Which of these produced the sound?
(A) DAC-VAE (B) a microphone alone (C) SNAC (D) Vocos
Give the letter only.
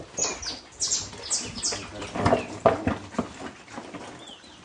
B